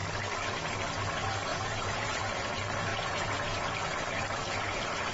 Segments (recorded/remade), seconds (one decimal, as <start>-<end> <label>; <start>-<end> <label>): 0.0-1.5 recorded; 1.5-2.2 remade; 2.2-2.9 recorded; 2.9-3.7 remade; 3.7-4.4 recorded; 4.4-5.1 remade